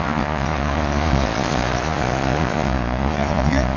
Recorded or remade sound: remade